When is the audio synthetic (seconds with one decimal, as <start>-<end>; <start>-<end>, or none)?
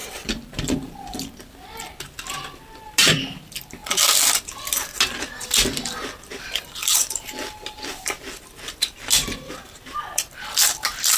0.0-1.3; 6.8-8.4